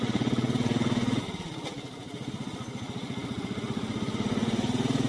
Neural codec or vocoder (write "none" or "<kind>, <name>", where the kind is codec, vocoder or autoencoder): none